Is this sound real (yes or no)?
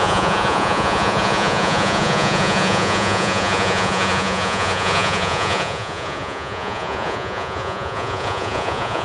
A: no